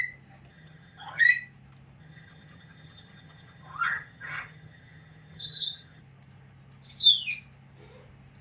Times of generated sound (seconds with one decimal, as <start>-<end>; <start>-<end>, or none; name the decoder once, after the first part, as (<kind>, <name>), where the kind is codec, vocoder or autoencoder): 0.5-1.2 (vocoder, HiFi-GAN); 2.0-6.0